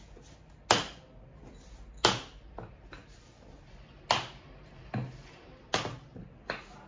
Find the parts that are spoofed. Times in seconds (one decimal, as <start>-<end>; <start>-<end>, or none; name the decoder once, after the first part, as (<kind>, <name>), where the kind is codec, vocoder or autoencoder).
none